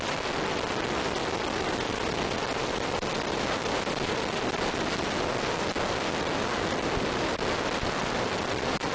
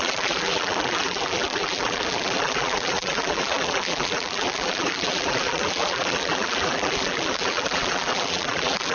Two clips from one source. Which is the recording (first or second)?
first